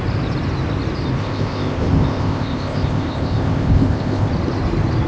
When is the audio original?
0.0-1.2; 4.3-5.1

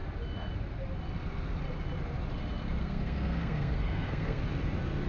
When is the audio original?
0.0-2.8; 4.4-5.1